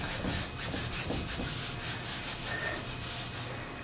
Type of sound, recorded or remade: recorded